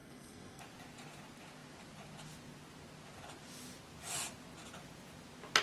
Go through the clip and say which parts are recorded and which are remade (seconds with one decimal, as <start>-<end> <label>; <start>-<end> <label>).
0.0-0.6 remade; 0.6-5.6 recorded